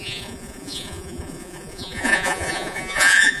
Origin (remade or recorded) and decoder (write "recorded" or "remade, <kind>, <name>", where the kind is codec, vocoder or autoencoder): remade, vocoder, Vocos